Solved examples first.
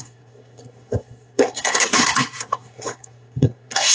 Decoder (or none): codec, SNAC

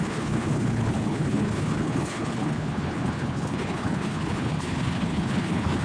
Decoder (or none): codec, HILCodec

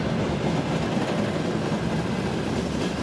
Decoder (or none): none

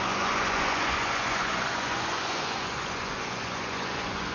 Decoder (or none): vocoder, Vocos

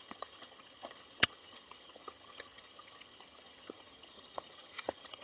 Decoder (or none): vocoder, HiFi-GAN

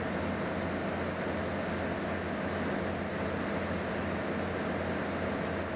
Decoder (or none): none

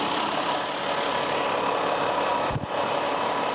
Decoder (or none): none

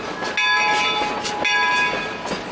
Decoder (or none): none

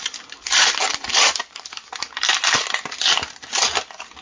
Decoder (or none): none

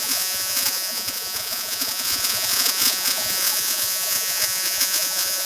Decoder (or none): vocoder, Vocos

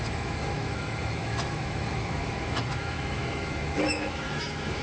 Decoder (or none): autoencoder, DAC-VAE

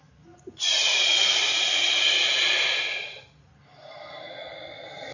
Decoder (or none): none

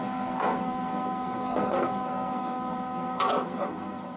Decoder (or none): codec, SNAC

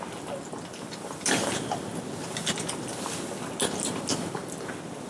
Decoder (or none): none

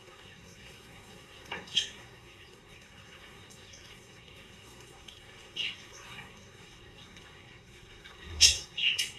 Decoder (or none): codec, SNAC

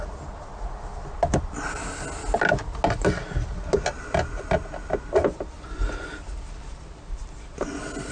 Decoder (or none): none